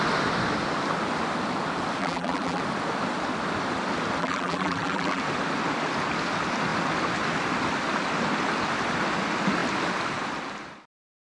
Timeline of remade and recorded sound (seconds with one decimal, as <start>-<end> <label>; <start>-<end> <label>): 0.0-2.0 recorded; 2.0-2.6 remade; 2.6-4.2 recorded; 4.2-5.2 remade; 5.2-11.3 recorded